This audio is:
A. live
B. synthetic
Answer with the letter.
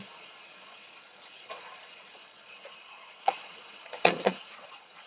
B